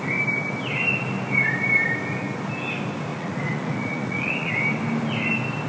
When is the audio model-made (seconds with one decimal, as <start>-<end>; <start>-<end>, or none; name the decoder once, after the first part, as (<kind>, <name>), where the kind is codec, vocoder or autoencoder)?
3.1-4.5 (vocoder, Vocos)